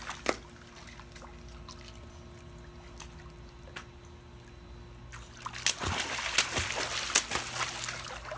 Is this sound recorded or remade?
recorded